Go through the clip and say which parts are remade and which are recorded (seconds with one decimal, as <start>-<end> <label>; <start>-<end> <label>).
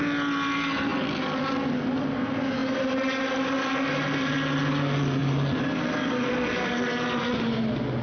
0.0-8.0 recorded